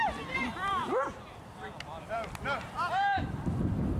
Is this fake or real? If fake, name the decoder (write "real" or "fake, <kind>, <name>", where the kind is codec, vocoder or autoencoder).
fake, vocoder, BigVGAN v2